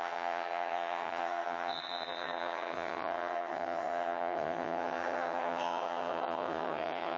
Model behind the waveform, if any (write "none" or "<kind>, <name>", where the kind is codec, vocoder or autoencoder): vocoder, HiFi-GAN